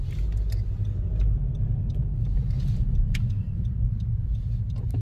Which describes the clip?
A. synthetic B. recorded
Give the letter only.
B